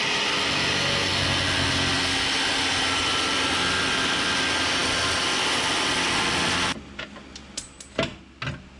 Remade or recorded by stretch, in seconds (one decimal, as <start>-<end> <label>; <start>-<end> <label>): 0.0-8.8 recorded